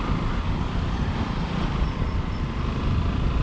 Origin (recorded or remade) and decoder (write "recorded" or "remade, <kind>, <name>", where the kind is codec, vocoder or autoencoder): recorded